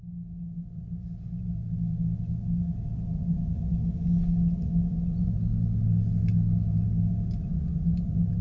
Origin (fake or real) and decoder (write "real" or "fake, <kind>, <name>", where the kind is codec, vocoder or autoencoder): real